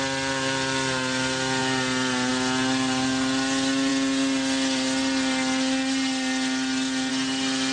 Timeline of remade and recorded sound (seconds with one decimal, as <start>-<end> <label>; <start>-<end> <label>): 0.0-7.7 recorded